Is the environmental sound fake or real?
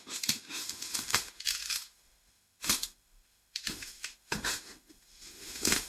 fake